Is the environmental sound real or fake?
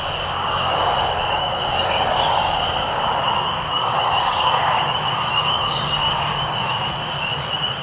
fake